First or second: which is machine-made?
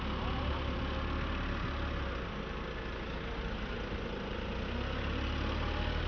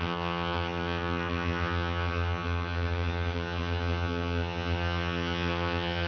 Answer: second